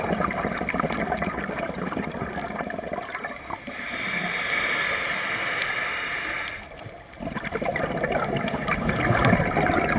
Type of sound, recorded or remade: remade